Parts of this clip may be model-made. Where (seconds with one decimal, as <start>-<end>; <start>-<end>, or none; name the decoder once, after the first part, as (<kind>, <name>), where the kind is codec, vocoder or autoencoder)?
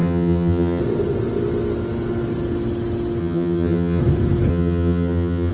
0.0-0.8 (vocoder, HiFi-GAN); 3.2-4.0; 4.5-5.5